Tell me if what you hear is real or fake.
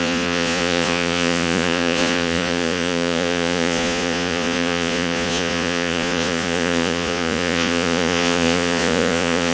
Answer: fake